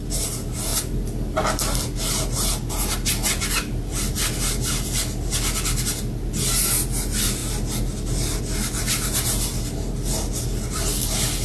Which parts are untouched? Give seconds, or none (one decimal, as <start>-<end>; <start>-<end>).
0.0-11.4